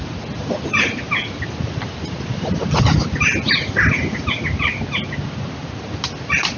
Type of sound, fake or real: real